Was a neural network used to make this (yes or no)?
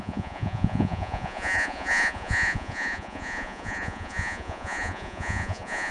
yes